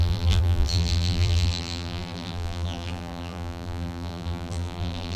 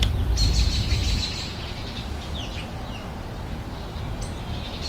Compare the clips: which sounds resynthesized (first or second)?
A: first